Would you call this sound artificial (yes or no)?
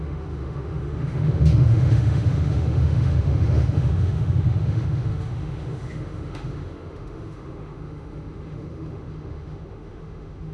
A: yes